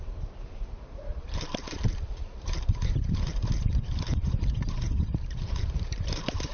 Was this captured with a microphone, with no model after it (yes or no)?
no